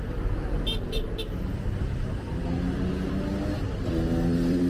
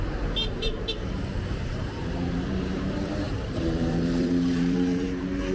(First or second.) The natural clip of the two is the first